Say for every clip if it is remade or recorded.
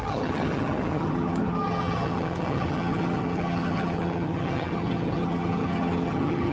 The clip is remade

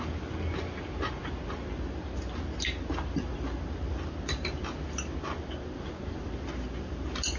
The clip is recorded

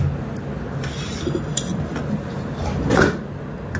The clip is recorded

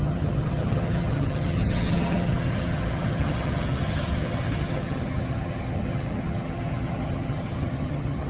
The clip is remade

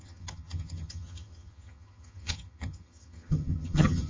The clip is remade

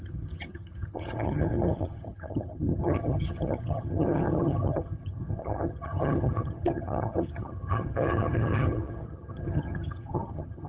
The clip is remade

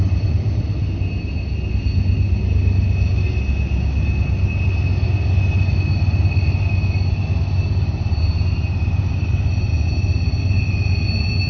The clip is recorded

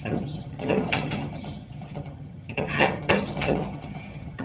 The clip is remade